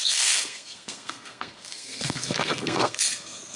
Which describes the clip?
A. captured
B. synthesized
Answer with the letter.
B